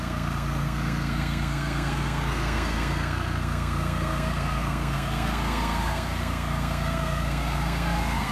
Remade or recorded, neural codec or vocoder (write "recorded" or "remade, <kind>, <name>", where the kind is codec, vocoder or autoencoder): remade, codec, SNAC